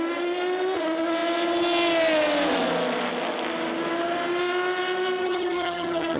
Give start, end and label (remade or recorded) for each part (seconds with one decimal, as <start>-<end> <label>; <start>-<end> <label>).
0.0-5.2 recorded; 5.2-6.2 remade